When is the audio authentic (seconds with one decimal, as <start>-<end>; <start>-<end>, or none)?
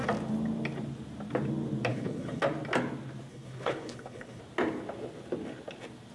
0.0-1.9; 2.4-3.3; 4.4-6.1